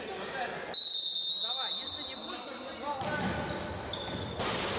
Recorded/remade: recorded